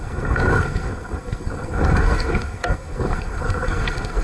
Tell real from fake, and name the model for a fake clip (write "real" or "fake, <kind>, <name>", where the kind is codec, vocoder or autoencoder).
fake, codec, SNAC